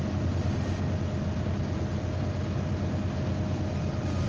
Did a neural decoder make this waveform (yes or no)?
no